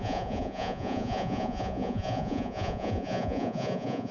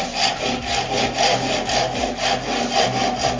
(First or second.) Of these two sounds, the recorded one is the second